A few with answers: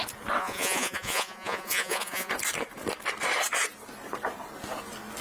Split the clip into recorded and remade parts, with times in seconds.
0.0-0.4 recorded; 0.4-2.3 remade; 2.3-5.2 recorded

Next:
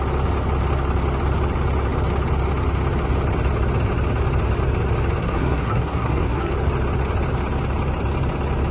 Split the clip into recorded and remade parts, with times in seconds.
0.0-5.2 recorded; 5.2-6.5 remade; 6.5-8.7 recorded

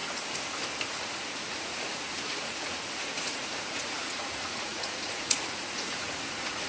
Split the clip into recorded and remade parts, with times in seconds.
0.0-0.9 recorded; 0.9-6.7 remade

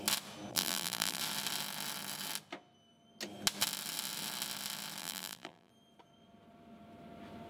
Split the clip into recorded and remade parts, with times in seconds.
0.0-0.5 recorded; 0.5-1.2 remade; 1.2-5.0 recorded; 5.0-5.7 remade; 5.7-7.5 recorded

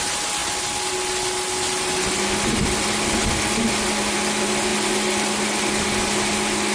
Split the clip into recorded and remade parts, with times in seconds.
0.0-6.7 recorded

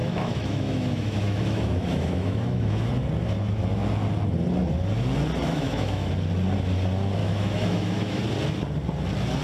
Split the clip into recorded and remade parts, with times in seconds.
0.0-2.9 remade; 2.9-5.4 recorded; 5.4-6.1 remade; 6.1-7.2 recorded; 7.2-8.2 remade; 8.2-9.4 recorded